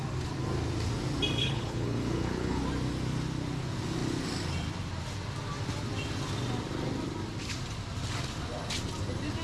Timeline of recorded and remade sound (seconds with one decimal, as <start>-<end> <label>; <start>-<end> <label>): 0.0-1.4 recorded; 1.4-2.6 remade; 2.6-9.4 recorded